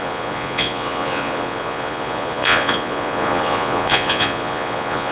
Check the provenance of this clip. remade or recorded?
remade